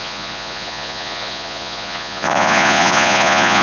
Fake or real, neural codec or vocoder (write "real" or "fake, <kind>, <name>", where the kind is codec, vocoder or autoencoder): fake, vocoder, Vocos